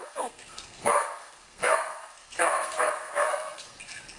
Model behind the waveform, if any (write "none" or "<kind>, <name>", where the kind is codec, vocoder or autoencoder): codec, SNAC